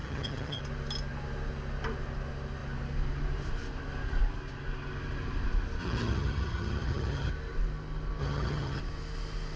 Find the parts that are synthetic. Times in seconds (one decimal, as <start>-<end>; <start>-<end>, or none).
0.0-0.6; 5.8-7.3; 8.2-8.8